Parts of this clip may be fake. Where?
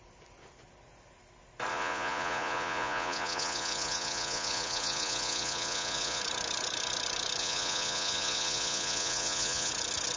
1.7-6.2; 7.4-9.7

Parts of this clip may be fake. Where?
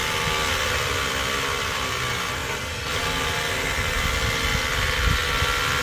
none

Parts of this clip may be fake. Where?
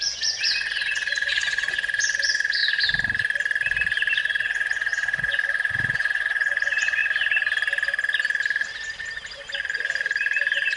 0.0-2.6; 4.2-7.0